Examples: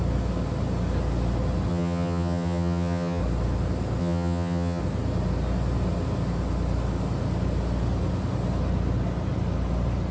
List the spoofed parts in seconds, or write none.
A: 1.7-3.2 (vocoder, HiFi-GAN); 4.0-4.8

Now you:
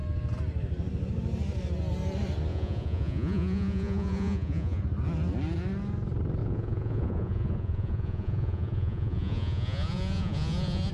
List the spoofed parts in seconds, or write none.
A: 2.5-4.8 (vocoder, Vocos); 6.4-10.9

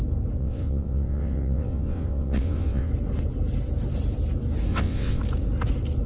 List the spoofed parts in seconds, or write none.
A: 0.4-2.9 (vocoder, WaveNeXt); 4.7-5.2

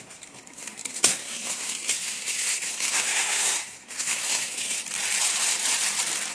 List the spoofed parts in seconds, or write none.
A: 0.0-4.8 (codec, SNAC)

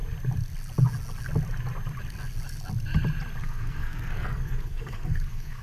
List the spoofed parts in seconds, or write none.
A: 3.4-5.6 (codec, SNAC)